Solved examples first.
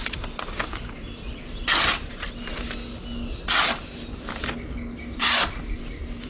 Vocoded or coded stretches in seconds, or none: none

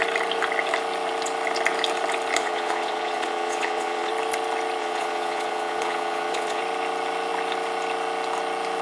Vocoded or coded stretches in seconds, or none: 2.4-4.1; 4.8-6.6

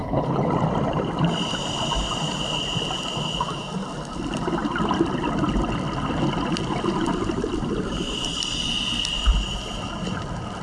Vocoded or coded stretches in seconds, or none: 0.0-0.5

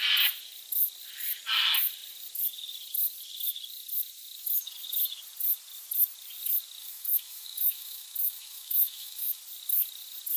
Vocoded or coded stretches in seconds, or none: 6.8-9.4

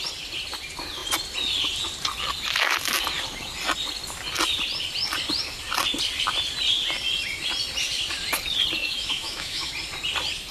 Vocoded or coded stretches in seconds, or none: 8.8-9.7